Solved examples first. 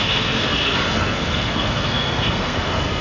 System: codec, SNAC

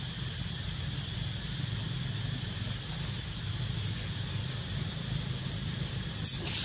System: none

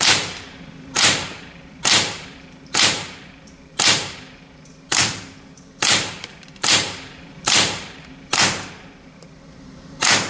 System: vocoder, BigVGAN v2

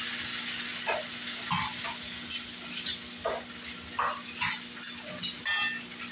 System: none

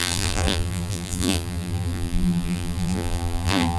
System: vocoder, BigVGAN v2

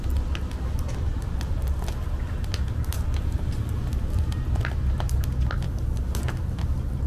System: none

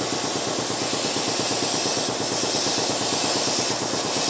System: none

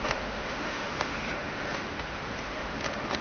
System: autoencoder, DAC-VAE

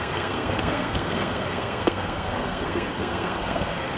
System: codec, SNAC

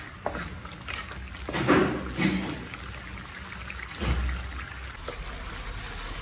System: none